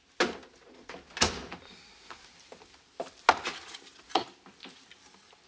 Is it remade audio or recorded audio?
recorded